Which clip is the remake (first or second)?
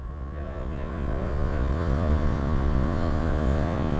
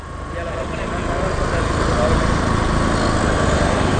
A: first